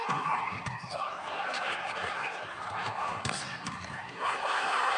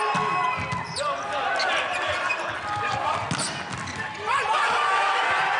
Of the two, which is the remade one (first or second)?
first